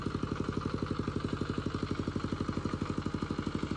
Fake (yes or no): no